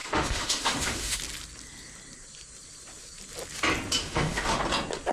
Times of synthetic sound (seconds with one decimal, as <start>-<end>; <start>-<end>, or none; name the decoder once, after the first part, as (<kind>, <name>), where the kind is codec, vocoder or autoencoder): 0.0-1.2 (autoencoder, DAC-VAE); 4.0-4.6